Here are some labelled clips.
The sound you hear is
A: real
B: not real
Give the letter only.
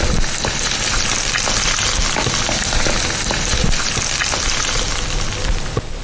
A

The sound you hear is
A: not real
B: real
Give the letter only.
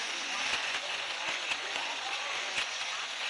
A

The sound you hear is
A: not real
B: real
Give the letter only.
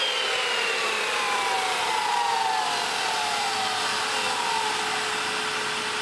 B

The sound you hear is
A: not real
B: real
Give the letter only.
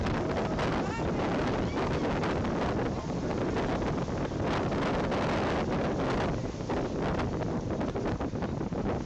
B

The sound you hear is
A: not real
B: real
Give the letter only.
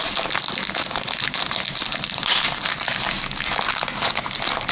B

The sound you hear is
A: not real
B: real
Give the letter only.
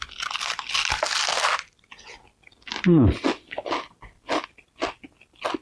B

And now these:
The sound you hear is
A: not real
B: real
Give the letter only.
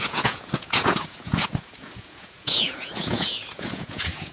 A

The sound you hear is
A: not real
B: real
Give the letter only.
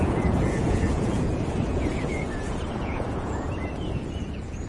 A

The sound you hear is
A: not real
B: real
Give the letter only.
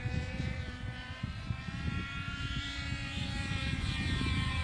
A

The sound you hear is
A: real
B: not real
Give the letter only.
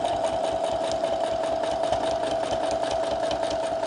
A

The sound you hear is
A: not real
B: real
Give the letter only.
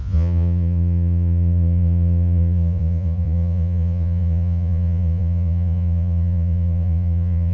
A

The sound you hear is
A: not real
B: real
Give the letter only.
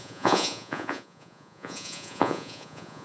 A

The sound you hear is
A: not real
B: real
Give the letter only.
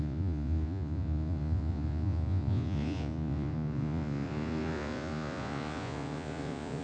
A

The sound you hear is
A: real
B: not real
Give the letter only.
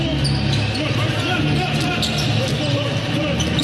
A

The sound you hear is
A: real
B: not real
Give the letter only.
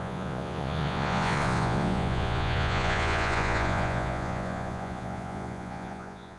B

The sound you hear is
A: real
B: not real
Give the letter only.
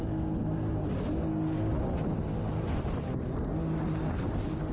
A